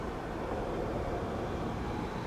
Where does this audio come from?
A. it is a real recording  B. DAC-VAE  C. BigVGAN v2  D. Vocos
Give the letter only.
C